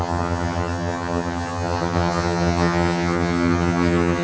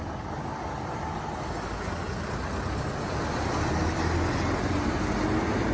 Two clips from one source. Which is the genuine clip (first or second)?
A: second